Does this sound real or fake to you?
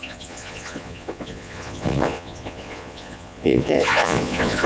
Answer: fake